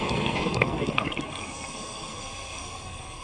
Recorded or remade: remade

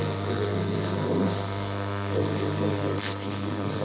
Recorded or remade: remade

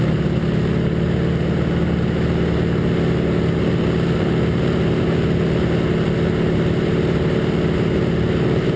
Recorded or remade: recorded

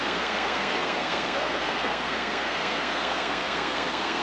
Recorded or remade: remade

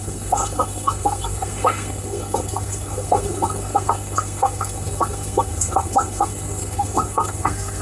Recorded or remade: remade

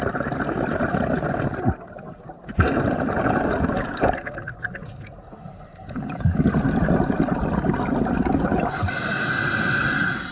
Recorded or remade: recorded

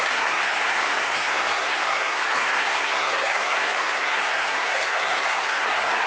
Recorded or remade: remade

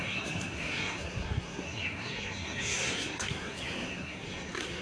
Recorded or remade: remade